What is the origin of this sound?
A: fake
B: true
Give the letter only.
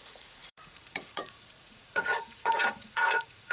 A